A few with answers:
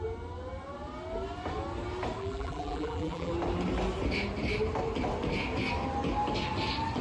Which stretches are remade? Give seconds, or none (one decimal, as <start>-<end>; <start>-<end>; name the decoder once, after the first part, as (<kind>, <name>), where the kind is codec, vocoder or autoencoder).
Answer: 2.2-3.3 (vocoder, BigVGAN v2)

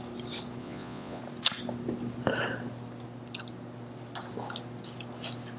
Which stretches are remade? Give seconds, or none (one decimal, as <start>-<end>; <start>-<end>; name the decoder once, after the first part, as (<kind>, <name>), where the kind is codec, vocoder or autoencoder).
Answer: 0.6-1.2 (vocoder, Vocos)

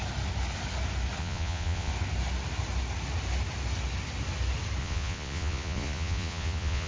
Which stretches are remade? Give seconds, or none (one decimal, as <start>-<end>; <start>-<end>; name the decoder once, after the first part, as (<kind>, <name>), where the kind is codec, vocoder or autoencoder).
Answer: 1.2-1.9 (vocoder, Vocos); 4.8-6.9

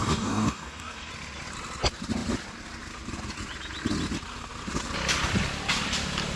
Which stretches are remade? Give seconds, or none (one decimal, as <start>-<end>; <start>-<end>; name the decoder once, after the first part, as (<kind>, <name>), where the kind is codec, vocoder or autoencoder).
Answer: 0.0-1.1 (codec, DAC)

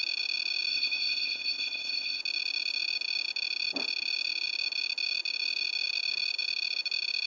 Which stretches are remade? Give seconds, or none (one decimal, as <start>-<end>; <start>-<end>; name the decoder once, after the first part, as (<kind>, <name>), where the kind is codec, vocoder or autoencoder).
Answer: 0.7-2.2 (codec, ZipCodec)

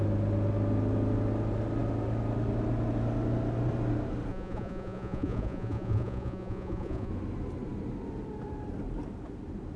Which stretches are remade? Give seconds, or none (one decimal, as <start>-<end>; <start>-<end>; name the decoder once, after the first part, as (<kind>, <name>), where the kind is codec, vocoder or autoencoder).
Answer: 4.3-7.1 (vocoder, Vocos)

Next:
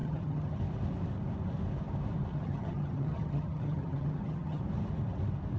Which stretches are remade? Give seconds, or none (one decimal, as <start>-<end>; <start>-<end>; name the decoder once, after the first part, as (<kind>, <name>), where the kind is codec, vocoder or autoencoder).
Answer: 0.0-0.6 (vocoder, HiFi-GAN); 2.3-4.6

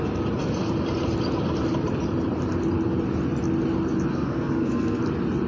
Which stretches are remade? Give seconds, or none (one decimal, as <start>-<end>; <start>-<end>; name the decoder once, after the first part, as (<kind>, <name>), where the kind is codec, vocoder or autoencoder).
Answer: 4.1-5.0 (codec, SNAC)